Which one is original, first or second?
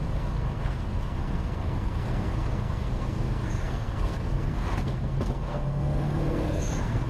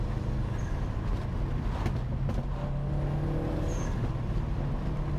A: second